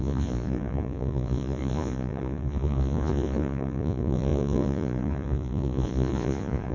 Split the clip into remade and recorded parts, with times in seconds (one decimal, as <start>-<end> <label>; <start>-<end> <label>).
0.0-6.7 remade